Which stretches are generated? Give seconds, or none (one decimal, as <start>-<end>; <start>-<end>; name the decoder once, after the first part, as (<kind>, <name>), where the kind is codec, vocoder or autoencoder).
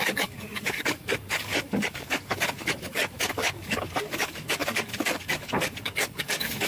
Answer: 0.0-6.7 (codec, DAC)